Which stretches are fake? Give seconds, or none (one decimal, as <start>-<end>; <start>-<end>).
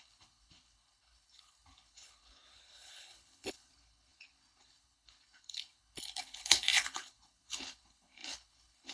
0.0-8.9